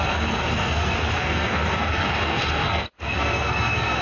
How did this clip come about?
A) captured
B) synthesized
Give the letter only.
B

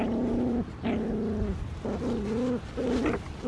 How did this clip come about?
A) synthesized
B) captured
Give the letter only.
B